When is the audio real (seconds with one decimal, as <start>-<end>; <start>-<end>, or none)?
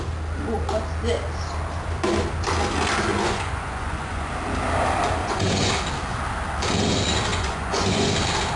0.0-3.1; 4.3-5.2; 5.7-7.3; 8.1-8.6